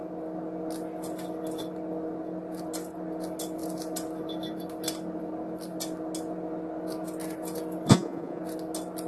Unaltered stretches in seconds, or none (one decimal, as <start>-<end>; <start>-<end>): 0.0-7.9; 8.4-9.1